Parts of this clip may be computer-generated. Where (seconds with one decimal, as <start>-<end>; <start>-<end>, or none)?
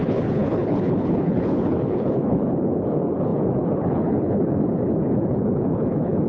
0.0-6.3